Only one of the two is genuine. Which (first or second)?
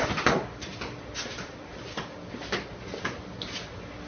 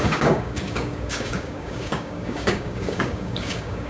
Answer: first